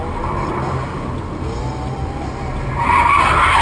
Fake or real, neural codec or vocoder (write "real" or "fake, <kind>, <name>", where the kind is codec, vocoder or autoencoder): real